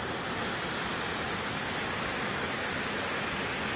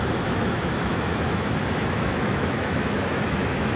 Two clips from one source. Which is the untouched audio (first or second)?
first